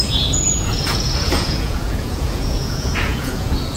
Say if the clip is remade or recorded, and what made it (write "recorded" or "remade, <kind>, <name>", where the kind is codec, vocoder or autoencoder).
remade, vocoder, Vocos